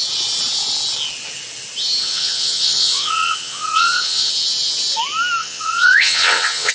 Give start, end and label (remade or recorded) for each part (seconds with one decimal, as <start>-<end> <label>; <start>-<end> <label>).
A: 0.0-2.0 recorded; 2.0-4.3 remade; 4.3-5.4 recorded; 5.4-6.7 remade